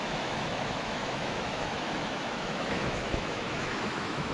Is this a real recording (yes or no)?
no